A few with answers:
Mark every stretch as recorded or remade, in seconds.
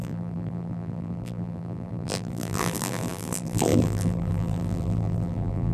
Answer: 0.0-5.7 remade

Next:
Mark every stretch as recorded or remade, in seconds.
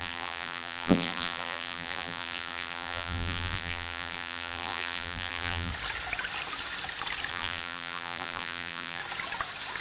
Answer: 0.0-5.7 remade; 5.7-7.3 recorded; 7.3-9.0 remade; 9.0-9.8 recorded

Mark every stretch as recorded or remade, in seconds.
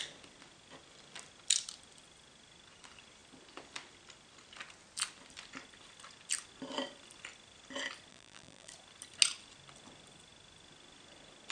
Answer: 0.0-8.1 recorded; 8.1-8.7 remade; 8.7-11.5 recorded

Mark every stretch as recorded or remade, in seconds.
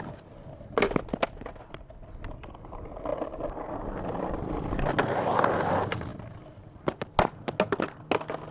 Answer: 0.0-8.5 recorded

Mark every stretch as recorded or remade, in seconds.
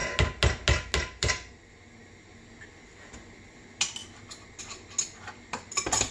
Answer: 0.0-6.1 recorded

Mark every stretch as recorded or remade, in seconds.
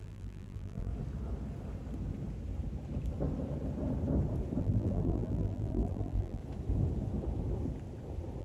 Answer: 0.0-0.9 remade; 0.9-4.6 recorded; 4.6-6.4 remade; 6.4-8.4 recorded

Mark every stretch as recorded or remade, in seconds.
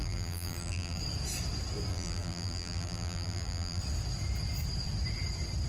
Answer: 0.0-1.0 remade; 1.0-1.9 recorded; 1.9-3.8 remade; 3.8-5.7 recorded